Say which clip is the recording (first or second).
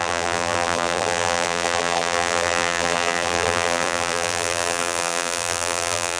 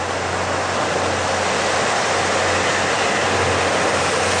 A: second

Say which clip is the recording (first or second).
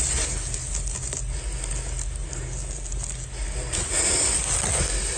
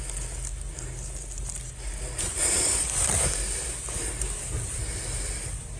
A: first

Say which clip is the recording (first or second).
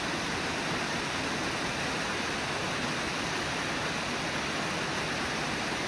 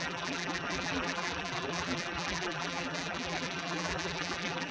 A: first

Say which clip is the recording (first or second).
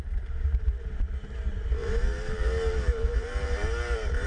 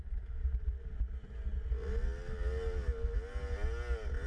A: second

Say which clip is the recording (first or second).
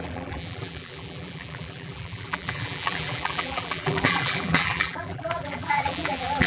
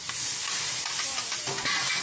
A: second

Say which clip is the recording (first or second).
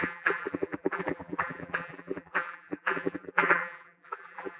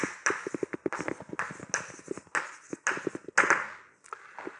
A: second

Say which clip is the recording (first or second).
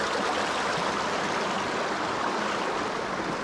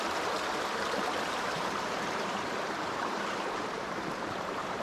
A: first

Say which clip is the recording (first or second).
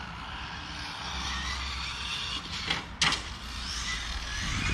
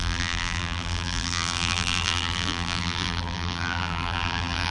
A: first